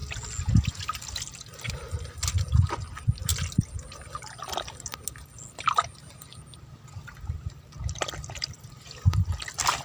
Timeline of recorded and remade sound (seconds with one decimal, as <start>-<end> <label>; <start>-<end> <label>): 0.0-9.8 recorded